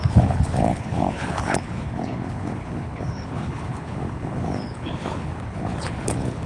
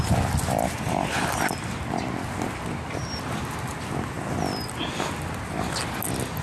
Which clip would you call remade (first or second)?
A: first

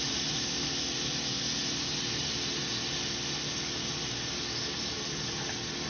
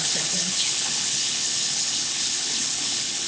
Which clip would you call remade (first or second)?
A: second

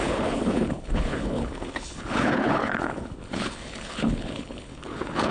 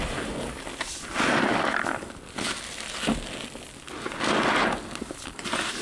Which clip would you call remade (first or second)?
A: first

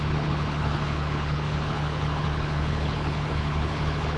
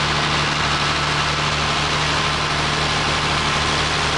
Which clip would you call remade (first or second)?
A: first